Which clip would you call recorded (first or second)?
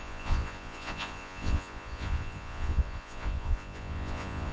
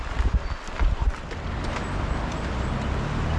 second